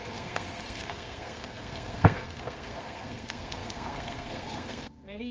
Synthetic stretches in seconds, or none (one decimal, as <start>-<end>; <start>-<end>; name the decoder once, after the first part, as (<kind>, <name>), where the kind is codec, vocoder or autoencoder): 0.0-5.3 (codec, SNAC)